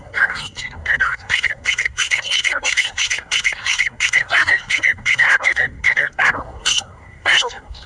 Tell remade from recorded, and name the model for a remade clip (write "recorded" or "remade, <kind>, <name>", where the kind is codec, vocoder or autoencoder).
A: remade, codec, SNAC